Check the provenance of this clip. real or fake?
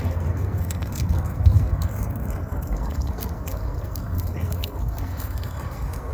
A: fake